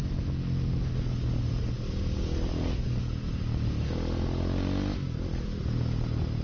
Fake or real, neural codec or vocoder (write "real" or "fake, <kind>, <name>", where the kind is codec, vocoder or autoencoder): real